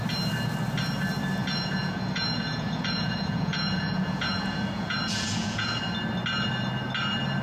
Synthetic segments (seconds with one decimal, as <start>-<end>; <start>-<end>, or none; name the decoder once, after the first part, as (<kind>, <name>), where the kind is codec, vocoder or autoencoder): 1.4-5.8 (vocoder, Vocos)